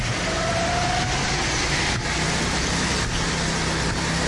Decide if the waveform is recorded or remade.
recorded